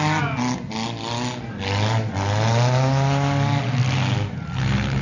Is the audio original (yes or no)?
yes